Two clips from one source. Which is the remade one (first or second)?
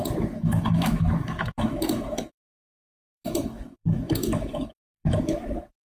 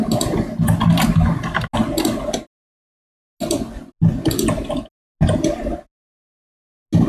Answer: first